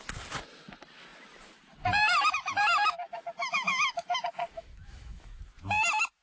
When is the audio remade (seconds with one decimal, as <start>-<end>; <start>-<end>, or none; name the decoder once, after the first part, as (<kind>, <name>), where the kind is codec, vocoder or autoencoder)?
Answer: 2.7-5.4 (autoencoder, DAC-VAE)